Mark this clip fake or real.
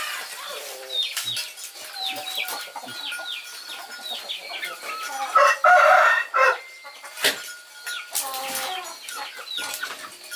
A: real